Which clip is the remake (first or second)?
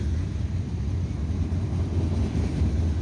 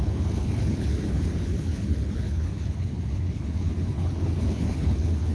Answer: second